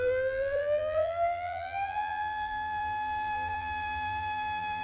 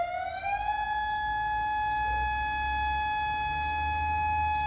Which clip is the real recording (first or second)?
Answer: second